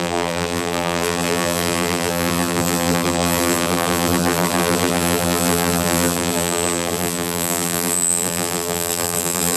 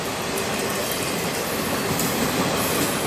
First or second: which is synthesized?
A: first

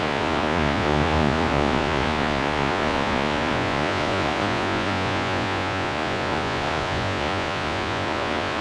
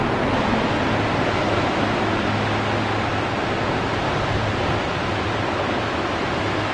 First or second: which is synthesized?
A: first